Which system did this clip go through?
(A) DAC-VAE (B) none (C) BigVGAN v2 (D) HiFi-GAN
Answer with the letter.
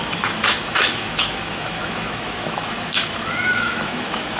A